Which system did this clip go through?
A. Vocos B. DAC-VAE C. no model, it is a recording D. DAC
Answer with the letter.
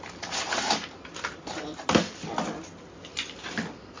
C